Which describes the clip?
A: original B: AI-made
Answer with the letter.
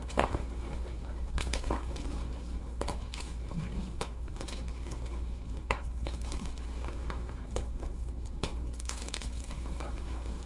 B